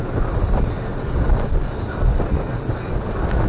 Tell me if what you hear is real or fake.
real